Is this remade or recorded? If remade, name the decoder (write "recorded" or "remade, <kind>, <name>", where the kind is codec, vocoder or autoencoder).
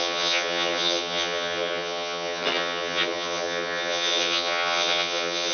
remade, vocoder, HiFi-GAN